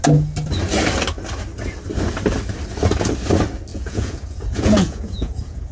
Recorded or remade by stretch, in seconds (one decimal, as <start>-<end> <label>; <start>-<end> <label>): 0.0-3.7 recorded; 3.7-5.7 remade